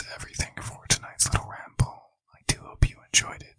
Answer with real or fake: fake